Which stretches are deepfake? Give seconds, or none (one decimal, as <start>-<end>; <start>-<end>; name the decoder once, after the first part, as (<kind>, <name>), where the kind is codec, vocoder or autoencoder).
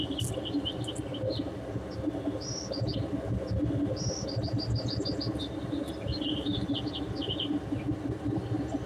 none